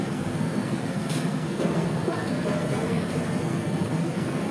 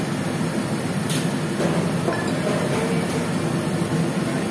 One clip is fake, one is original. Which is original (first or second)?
second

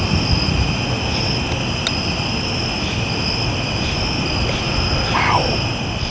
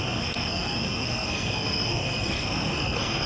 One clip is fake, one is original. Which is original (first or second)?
first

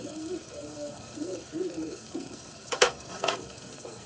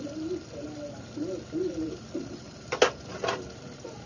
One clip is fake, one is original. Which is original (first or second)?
second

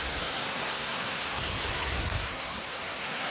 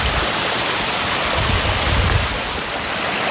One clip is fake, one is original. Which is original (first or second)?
second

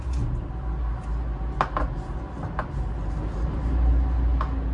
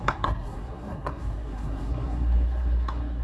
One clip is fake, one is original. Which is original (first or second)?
first